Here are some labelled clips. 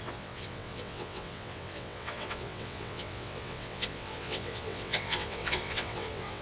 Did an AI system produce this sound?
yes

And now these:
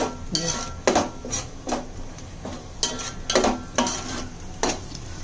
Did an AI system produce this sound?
no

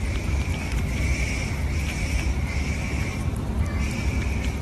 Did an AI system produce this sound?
yes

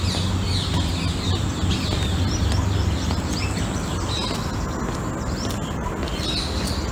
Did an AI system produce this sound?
no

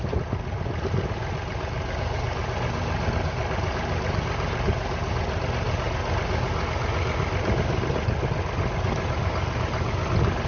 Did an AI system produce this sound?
no